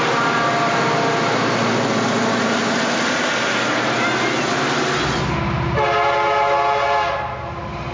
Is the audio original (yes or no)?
yes